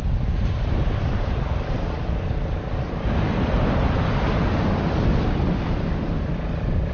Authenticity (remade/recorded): recorded